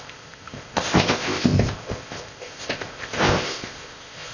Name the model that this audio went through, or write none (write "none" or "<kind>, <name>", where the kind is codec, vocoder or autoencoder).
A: codec, ZipCodec